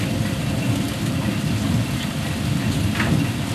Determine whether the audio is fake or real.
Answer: real